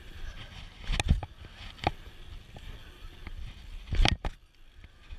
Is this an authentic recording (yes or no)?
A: yes